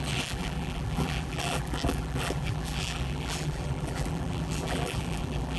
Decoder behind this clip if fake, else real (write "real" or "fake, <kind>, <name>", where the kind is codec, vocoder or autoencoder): fake, vocoder, BigVGAN v2